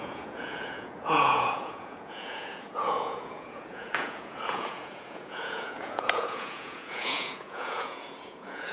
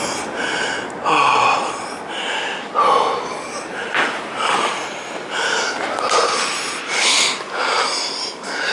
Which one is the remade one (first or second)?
first